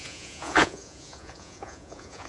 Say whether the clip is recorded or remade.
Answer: remade